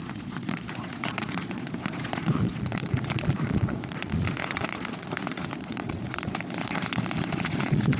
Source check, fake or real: fake